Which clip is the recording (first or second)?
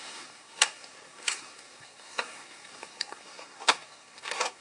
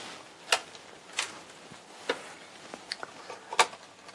second